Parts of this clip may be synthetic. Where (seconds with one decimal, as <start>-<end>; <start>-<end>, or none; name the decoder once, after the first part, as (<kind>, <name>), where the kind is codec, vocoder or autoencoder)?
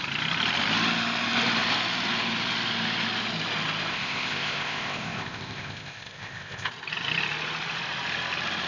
3.9-6.7 (codec, ZipCodec)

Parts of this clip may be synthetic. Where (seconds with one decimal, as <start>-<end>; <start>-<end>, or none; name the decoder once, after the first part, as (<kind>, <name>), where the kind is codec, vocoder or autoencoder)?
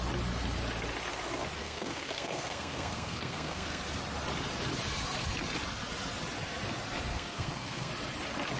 1.6-3.8 (codec, SNAC); 7.1-7.9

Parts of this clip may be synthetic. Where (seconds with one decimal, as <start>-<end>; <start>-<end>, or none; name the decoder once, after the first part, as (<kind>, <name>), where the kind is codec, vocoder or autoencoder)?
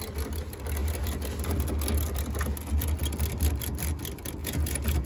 4.4-5.1 (vocoder, Vocos)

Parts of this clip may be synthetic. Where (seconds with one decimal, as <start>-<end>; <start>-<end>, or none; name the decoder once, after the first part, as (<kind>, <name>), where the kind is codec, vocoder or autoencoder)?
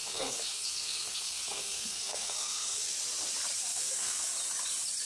0.0-2.9 (codec, SNAC); 3.7-4.3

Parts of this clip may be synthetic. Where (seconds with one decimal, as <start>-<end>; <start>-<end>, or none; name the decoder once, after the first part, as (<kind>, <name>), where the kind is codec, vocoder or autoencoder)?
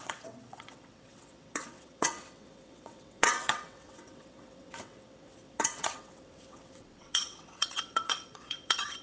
0.0-9.0 (vocoder, WaveNeXt)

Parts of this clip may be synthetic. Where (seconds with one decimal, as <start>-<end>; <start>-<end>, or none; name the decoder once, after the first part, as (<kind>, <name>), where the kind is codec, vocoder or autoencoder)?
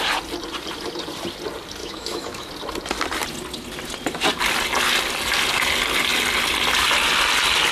1.8-2.5 (autoencoder, DAC-VAE)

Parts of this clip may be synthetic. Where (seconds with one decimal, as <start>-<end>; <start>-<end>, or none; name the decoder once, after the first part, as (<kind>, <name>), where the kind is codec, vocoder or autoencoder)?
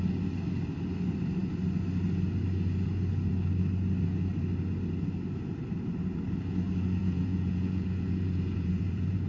7.0-9.3 (vocoder, Vocos)